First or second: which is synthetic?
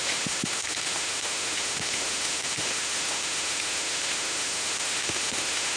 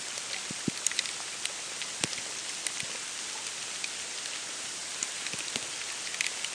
first